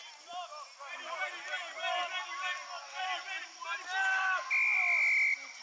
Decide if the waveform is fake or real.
real